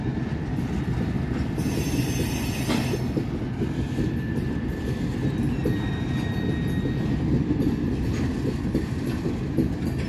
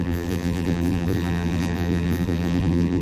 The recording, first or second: first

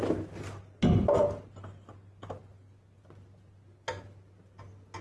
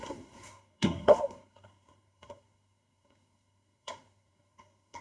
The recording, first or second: first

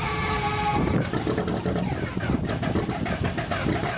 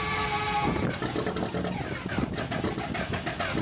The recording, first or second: second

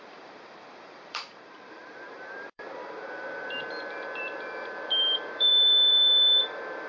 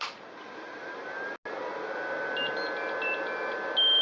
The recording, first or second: second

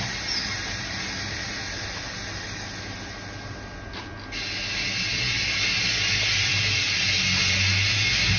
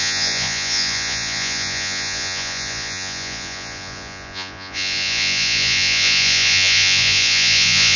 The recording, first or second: first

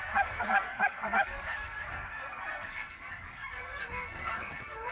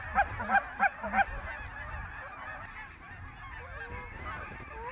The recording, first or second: second